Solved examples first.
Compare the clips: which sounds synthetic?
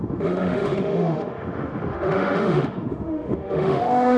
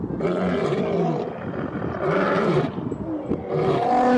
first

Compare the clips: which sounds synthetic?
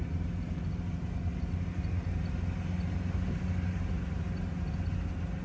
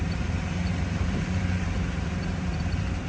second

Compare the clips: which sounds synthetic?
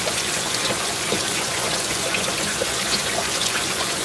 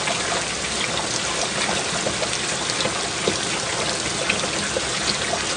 first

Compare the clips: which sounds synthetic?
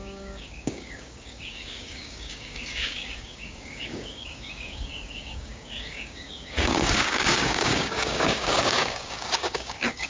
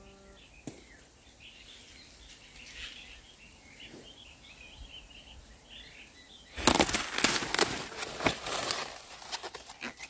first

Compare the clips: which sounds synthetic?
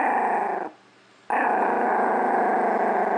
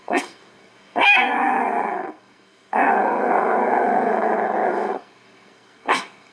second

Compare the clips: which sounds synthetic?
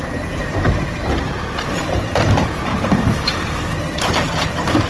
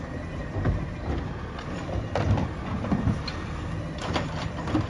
first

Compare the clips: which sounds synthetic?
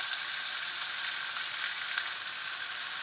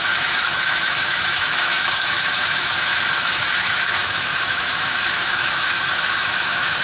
second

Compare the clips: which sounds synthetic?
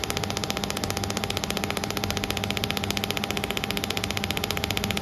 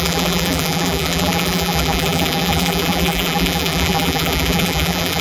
second